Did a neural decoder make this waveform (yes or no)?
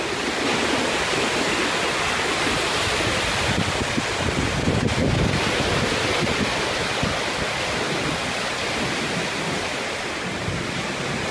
no